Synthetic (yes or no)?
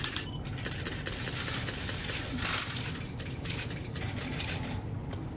no